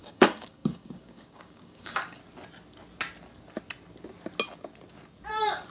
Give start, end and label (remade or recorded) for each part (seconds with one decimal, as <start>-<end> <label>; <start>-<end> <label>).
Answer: 0.0-2.2 remade; 2.2-5.7 recorded